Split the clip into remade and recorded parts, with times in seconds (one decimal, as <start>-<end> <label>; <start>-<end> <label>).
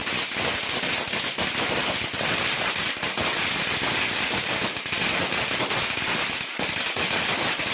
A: 0.0-7.7 recorded